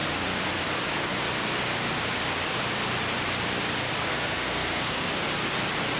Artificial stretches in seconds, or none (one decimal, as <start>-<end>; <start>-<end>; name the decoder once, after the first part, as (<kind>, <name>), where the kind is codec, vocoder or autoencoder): 4.1-5.1 (codec, SNAC)